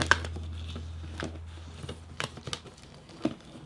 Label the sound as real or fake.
real